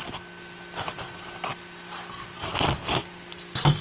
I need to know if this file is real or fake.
real